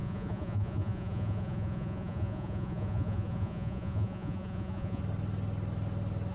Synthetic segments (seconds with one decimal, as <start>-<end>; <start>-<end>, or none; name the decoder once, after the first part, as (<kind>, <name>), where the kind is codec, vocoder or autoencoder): 0.0-5.0 (vocoder, Vocos)